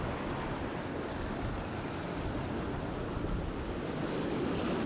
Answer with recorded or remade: recorded